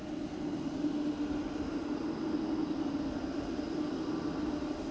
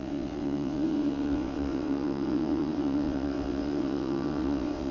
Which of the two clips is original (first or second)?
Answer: first